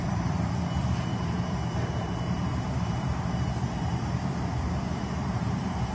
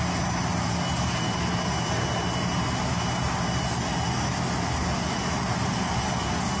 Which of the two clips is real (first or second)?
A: second